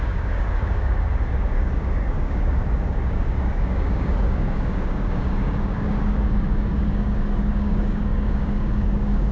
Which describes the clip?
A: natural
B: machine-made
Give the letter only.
B